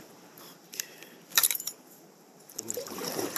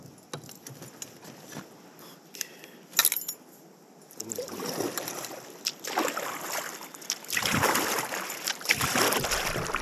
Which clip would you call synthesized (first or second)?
first